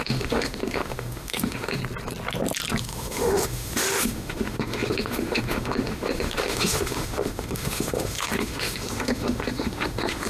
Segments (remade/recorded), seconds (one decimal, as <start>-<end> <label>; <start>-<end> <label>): 0.0-1.8 remade; 1.8-2.8 recorded; 2.8-10.3 remade